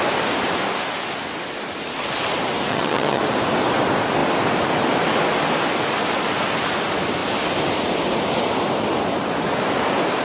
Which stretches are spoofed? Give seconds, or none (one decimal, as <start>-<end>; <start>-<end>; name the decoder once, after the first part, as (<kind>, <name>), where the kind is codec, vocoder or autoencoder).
2.7-3.2 (vocoder, HiFi-GAN)